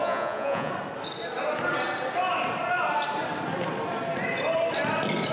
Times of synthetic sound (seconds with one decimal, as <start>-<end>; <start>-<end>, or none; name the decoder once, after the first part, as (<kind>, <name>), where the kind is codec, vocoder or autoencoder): 0.0-0.7 (vocoder, Vocos)